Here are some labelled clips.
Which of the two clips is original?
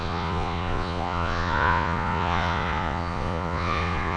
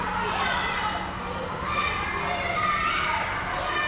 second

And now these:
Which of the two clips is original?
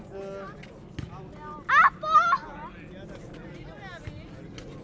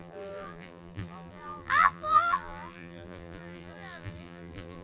first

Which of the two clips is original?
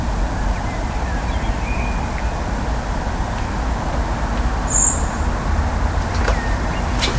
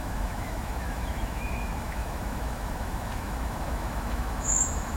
first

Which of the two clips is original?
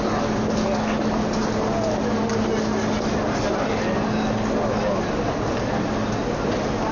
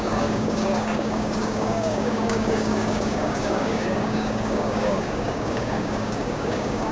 first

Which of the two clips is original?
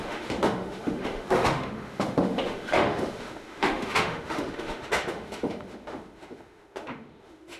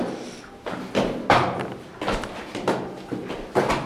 second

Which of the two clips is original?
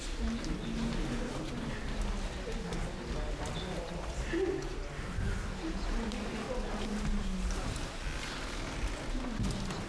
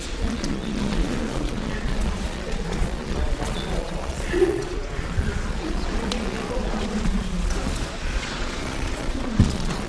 first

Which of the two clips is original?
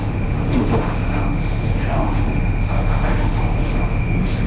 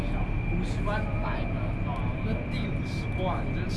second